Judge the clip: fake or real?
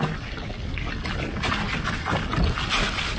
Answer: real